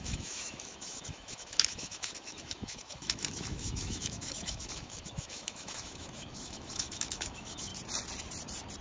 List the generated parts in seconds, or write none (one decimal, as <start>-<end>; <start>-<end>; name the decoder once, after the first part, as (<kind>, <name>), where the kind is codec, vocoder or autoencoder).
0.0-7.7 (autoencoder, DAC-VAE)